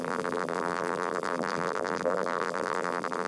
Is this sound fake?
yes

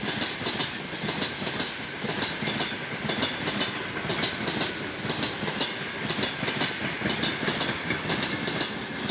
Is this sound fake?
no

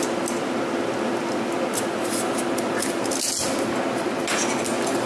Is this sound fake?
no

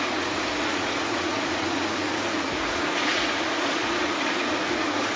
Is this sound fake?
yes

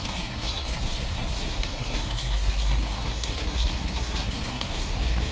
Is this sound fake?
yes